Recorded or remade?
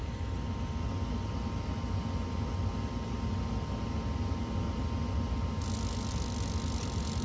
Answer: recorded